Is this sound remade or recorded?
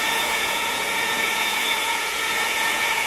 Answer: remade